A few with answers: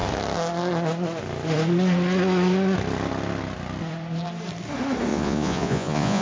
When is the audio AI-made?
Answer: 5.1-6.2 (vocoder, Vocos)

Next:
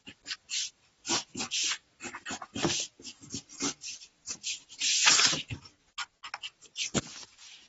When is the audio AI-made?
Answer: none

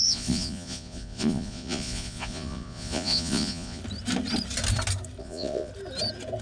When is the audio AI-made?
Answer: 0.0-3.8 (vocoder, Vocos); 5.2-5.7

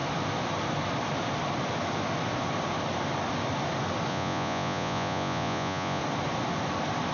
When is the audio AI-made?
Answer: 4.1-6.0 (vocoder, Vocos)

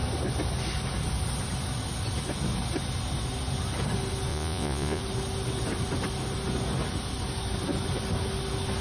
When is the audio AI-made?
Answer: 4.3-5.0 (vocoder, Vocos)

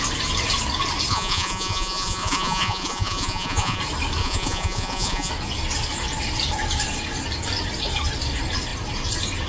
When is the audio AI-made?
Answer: 1.1-3.8 (vocoder, Vocos); 4.2-5.3